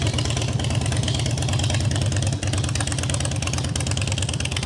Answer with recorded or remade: recorded